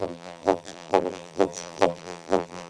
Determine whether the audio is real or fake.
fake